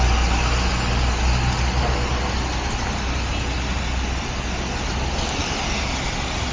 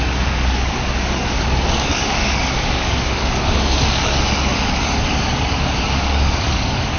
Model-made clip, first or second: second